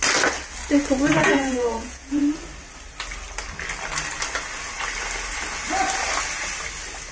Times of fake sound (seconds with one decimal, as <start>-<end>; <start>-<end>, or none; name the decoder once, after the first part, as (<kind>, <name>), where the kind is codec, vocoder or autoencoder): 1.2-2.2 (vocoder, Vocos)